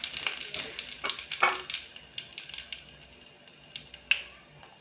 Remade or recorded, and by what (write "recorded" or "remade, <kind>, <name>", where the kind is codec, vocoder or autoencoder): recorded